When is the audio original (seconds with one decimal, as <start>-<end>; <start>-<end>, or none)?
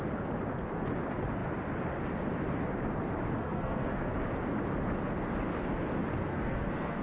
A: 0.0-3.4; 4.1-6.3